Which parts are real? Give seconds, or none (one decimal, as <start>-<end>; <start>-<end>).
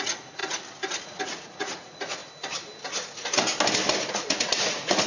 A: 0.4-1.0; 2.2-4.1